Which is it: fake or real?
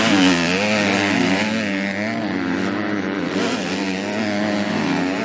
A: real